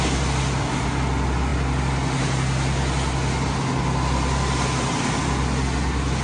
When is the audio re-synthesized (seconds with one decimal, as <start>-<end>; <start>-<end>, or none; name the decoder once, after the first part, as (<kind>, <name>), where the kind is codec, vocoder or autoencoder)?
none